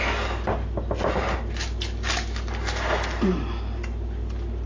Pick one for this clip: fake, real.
real